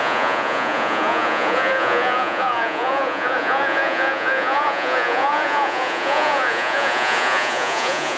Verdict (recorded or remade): remade